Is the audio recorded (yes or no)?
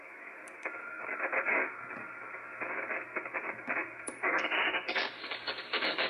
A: no